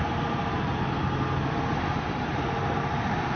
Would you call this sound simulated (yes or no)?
no